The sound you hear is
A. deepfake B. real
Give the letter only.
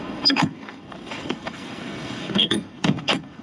A